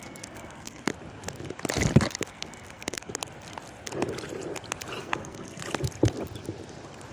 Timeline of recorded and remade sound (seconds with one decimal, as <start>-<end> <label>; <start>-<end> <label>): 0.0-0.9 remade; 0.9-2.3 recorded; 2.3-3.1 remade; 3.1-5.0 recorded; 5.0-5.6 remade; 5.6-7.1 recorded